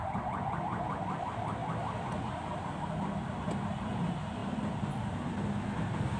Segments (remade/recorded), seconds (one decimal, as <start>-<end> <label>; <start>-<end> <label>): 0.0-6.2 recorded